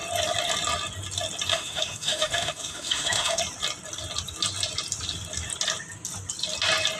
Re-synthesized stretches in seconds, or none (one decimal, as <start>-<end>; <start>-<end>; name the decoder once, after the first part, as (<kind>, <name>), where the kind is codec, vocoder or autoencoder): 1.5-3.4 (autoencoder, DAC-VAE)